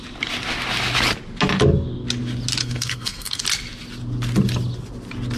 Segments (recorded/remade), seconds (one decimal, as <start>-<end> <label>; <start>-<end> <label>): 0.0-2.6 recorded; 2.6-3.4 remade; 3.4-5.4 recorded